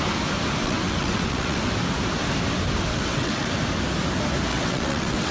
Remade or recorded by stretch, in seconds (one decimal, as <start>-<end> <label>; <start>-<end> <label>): 0.0-0.6 recorded; 0.6-1.6 remade; 1.6-2.9 recorded; 2.9-3.5 remade; 3.5-4.5 recorded; 4.5-5.3 remade